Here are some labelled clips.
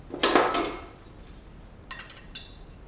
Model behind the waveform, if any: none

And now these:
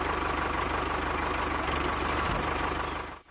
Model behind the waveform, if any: none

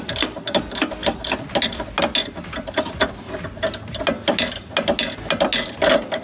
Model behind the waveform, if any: none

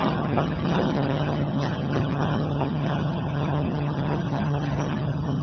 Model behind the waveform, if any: vocoder, HiFi-GAN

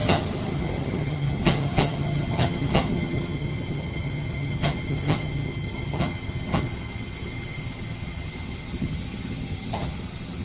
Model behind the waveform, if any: vocoder, HiFi-GAN